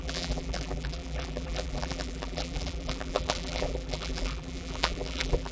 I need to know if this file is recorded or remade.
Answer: remade